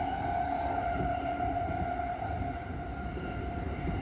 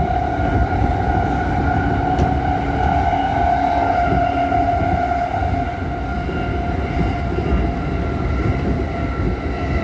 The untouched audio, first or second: second